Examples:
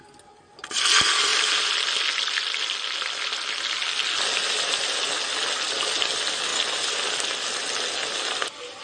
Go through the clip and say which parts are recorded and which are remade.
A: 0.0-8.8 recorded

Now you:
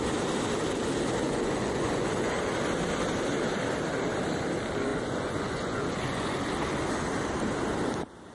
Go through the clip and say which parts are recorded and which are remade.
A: 0.0-1.2 recorded; 1.2-2.5 remade; 2.5-4.9 recorded; 4.9-6.5 remade; 6.5-8.3 recorded